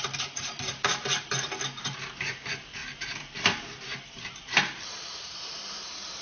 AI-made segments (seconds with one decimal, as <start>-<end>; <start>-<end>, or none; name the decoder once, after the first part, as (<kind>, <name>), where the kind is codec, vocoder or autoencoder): 0.0-6.2 (vocoder, BigVGAN v2)